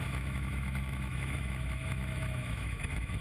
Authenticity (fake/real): fake